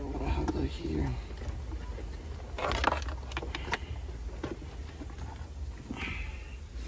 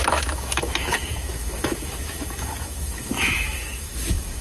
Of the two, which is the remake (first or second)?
second